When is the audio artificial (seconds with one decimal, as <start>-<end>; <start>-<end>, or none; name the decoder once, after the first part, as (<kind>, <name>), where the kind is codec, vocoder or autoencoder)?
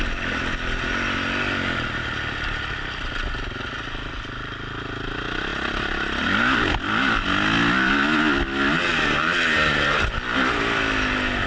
none